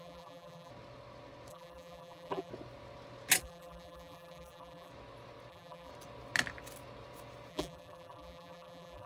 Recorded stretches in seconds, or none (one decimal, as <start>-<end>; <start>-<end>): 0.7-1.5; 2.5-3.4; 4.9-5.5; 5.9-7.5